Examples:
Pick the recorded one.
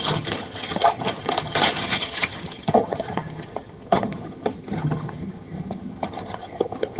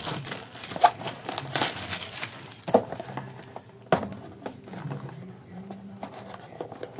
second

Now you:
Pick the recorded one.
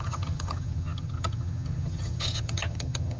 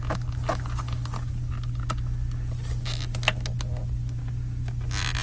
second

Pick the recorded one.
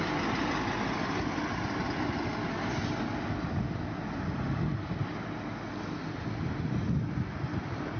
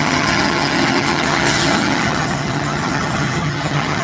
first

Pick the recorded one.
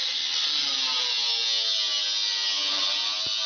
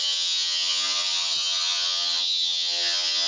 first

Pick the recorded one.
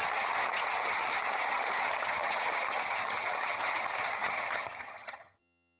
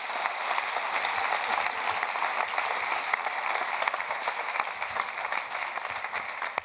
second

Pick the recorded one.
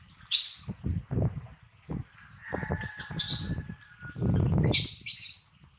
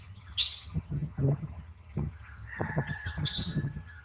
first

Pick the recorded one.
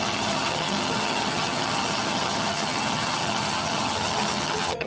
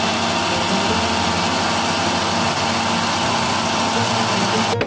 second